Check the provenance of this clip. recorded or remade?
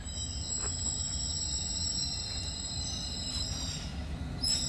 recorded